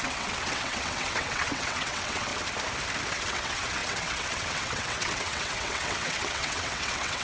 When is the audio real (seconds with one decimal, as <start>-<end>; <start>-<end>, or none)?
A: 2.3-3.1